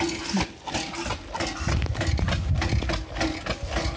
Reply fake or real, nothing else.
real